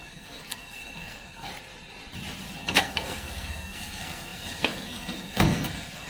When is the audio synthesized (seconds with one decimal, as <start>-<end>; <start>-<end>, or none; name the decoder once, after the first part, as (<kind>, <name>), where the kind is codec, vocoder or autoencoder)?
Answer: 0.0-1.5 (codec, SNAC); 2.6-6.1